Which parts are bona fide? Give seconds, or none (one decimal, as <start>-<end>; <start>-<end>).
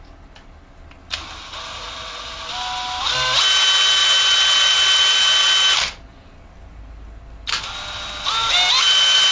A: 0.0-1.7; 2.3-9.3